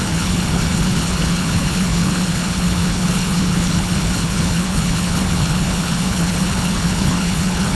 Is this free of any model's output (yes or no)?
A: no